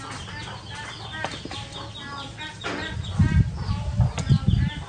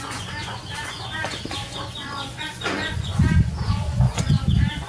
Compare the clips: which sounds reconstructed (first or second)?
second